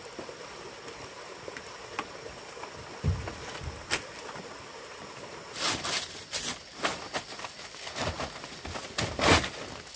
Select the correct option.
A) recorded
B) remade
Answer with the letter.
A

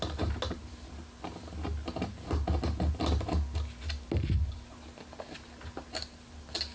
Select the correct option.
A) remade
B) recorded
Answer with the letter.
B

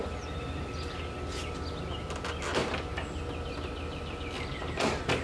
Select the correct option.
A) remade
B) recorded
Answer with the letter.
B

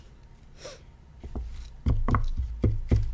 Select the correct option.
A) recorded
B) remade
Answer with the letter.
A